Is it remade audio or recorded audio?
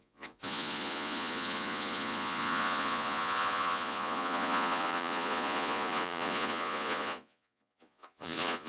remade